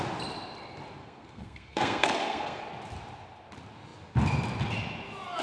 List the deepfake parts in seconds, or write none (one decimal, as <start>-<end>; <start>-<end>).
1.0-2.6